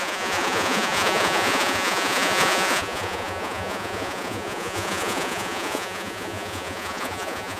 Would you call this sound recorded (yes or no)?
no